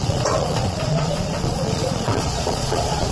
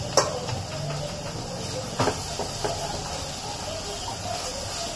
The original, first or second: second